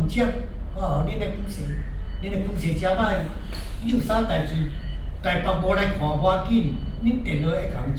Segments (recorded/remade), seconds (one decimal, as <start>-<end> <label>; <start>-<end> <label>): 0.0-2.4 recorded; 2.4-5.2 remade; 5.2-8.0 recorded